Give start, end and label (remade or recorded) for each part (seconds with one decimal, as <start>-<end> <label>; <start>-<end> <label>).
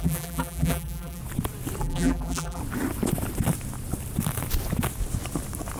0.0-1.2 remade; 1.2-1.8 recorded; 1.8-2.6 remade; 2.6-5.8 recorded